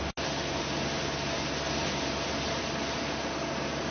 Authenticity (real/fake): real